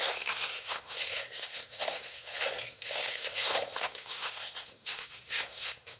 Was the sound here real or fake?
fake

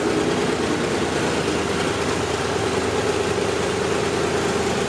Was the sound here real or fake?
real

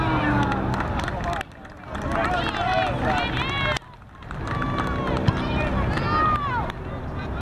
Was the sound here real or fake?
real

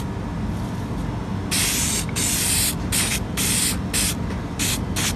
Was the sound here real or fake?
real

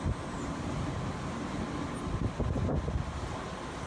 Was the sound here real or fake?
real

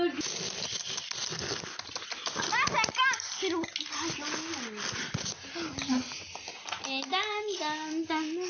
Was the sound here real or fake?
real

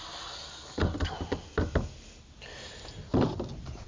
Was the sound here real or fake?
real